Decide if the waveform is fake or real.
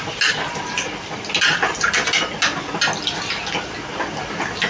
real